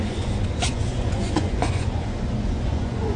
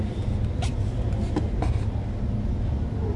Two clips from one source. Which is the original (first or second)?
second